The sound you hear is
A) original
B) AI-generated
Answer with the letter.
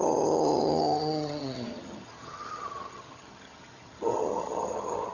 B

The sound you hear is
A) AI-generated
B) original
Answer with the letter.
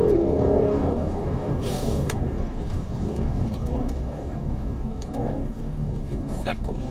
A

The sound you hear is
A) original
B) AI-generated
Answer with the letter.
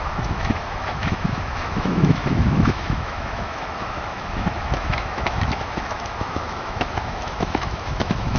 B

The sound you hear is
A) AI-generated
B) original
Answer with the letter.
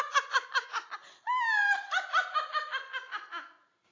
B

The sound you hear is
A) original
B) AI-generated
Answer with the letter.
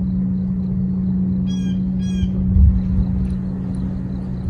A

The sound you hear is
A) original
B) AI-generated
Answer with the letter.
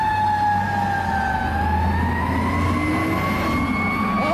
A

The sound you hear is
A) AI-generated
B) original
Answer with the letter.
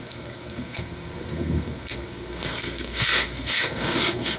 A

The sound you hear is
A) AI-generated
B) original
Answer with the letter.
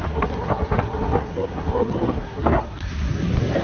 A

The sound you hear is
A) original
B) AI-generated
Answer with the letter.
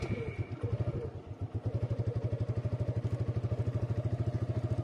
A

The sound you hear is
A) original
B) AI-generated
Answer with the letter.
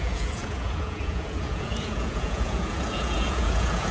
B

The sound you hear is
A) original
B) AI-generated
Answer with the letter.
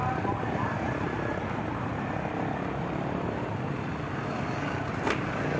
A